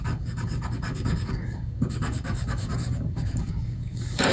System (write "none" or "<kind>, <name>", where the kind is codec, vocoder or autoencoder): codec, DAC